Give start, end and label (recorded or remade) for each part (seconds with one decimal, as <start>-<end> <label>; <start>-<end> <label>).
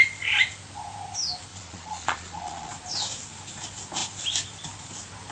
0.0-1.5 recorded; 1.5-2.7 remade; 2.7-5.3 recorded